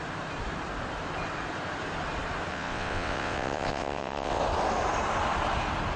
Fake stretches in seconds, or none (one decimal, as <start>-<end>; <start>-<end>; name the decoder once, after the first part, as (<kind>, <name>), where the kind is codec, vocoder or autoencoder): 2.5-4.4 (vocoder, WaveNeXt)